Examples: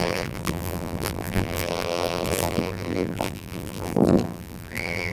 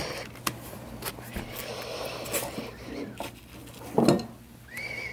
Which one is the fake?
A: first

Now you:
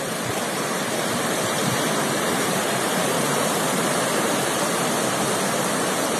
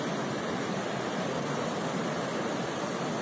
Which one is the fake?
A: first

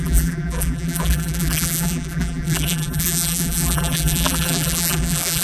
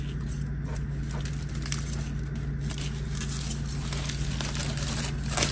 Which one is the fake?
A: first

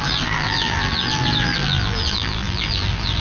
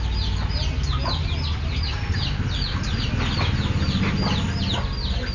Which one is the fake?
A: first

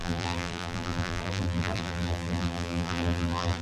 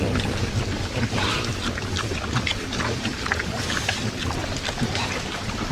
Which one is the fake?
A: first